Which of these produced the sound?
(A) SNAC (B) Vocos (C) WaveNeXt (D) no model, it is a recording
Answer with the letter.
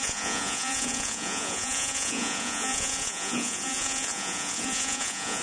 B